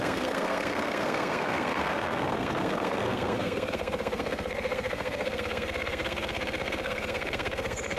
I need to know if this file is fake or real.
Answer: fake